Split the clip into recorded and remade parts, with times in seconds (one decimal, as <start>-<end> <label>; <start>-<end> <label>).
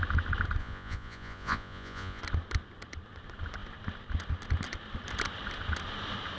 0.0-0.6 recorded; 0.6-2.2 remade; 2.2-6.4 recorded